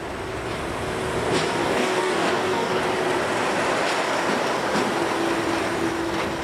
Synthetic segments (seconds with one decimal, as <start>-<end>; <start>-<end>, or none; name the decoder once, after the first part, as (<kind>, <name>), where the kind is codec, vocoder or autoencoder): 1.6-2.8 (codec, DAC)